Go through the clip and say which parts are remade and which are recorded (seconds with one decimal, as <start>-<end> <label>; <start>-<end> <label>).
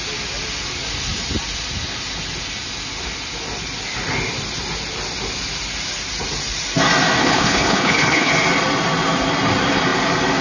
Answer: 0.0-7.2 recorded; 7.2-8.3 remade; 8.3-10.4 recorded